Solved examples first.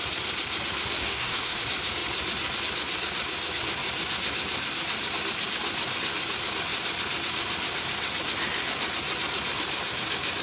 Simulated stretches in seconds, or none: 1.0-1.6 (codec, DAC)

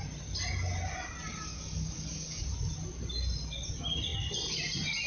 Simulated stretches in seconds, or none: 1.5-2.4 (codec, DAC)

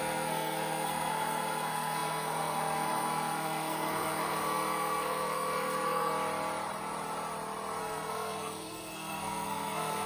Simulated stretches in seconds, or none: 0.0-6.1 (codec, SNAC); 7.8-10.1